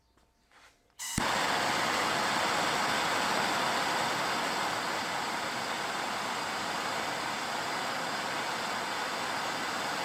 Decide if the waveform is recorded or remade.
recorded